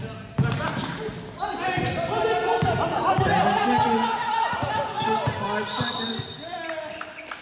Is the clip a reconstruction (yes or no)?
no